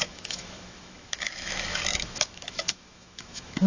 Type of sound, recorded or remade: remade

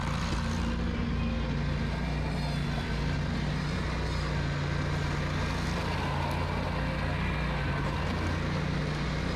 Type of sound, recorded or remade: recorded